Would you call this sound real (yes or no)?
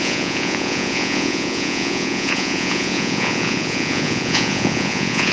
no